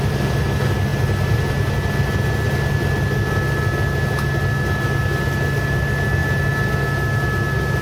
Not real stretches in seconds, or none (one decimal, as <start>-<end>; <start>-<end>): none